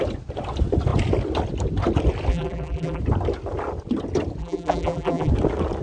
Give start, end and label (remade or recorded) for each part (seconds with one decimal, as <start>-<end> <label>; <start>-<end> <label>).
0.0-2.3 recorded; 2.3-3.0 remade; 3.0-4.4 recorded; 4.4-5.3 remade; 5.3-5.8 recorded